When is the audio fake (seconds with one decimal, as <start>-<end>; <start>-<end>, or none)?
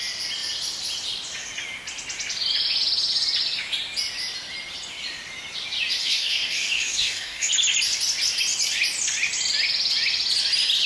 6.0-7.5